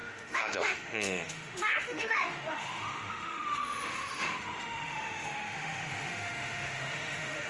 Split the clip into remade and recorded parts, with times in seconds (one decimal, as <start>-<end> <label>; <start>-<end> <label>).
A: 0.0-7.5 remade

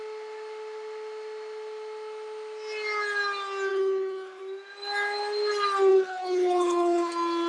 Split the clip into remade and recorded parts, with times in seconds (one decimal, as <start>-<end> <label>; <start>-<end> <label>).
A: 0.0-3.7 recorded; 3.7-4.4 remade; 4.4-5.9 recorded; 5.9-7.1 remade; 7.1-7.5 recorded

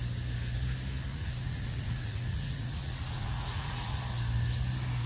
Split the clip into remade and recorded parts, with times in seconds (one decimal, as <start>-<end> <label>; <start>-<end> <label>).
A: 0.0-1.1 recorded; 1.1-4.0 remade; 4.0-5.1 recorded

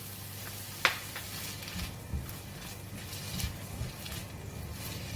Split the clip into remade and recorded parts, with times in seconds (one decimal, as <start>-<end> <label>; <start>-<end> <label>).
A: 0.0-5.2 recorded

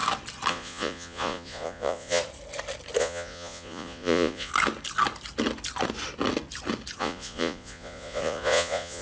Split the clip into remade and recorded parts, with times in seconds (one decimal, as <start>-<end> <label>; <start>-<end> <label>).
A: 0.0-0.5 recorded; 0.5-2.2 remade; 2.2-3.0 recorded; 3.0-4.5 remade; 4.5-7.0 recorded; 7.0-9.0 remade

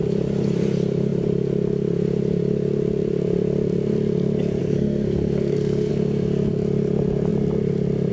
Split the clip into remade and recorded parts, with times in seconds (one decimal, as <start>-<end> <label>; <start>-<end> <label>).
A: 0.0-4.6 recorded; 4.6-5.9 remade; 5.9-8.1 recorded

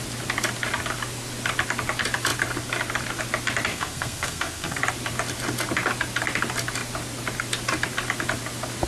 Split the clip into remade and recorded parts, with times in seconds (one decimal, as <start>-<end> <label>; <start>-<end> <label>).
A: 0.0-3.7 recorded; 3.7-4.8 remade; 4.8-8.9 recorded

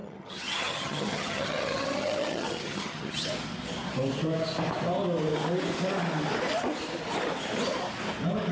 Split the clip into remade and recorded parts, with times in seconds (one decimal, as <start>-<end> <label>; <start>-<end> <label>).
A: 0.0-3.3 remade; 3.3-8.5 recorded